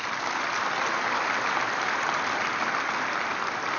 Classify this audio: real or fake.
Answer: real